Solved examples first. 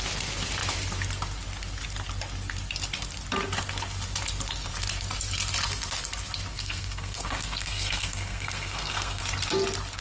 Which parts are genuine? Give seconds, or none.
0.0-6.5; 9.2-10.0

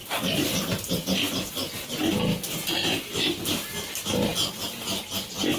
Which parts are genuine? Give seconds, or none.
0.0-5.6

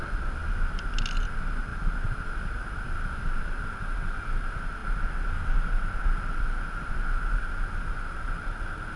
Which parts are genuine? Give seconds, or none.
0.0-9.0

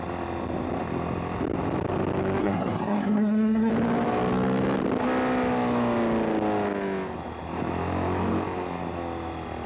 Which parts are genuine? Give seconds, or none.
0.0-2.4; 3.7-9.7

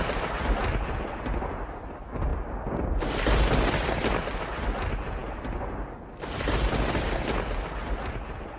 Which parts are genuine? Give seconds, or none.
0.0-8.6

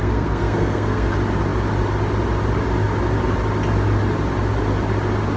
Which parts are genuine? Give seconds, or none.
1.1-5.4

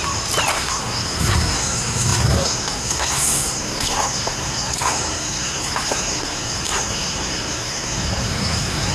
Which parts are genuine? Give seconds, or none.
0.0-0.5